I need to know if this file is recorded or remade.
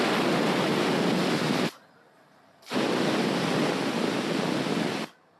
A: recorded